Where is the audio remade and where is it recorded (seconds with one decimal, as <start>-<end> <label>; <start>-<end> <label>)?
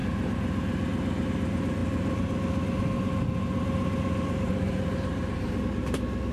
0.0-6.3 recorded